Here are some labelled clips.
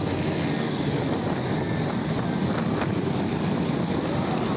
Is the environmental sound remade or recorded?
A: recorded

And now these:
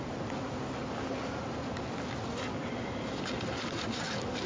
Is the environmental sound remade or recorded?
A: recorded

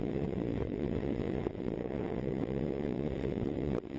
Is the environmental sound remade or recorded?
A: remade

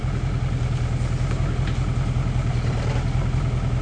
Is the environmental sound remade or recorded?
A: recorded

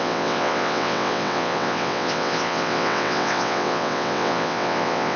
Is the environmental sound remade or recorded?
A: remade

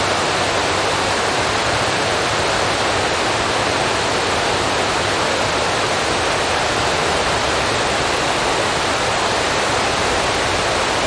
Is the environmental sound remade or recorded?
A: recorded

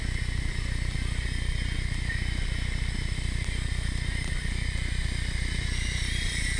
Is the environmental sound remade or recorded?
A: recorded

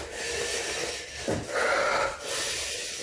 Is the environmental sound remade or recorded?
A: recorded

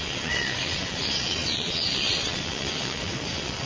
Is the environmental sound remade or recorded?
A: remade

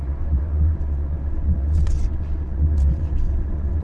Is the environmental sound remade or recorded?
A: remade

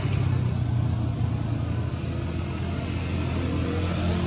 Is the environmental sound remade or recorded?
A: recorded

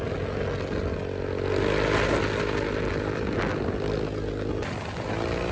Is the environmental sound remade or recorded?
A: recorded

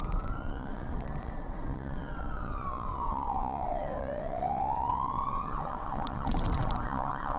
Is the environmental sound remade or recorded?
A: remade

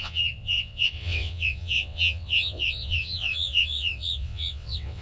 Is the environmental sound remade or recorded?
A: remade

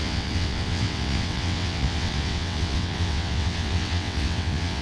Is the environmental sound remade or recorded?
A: remade